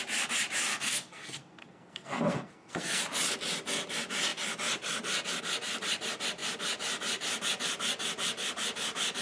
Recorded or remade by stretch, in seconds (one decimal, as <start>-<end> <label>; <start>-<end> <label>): 0.0-0.7 recorded; 0.7-3.0 remade; 3.0-9.2 recorded